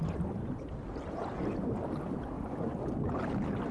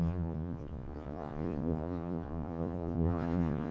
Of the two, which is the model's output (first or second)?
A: second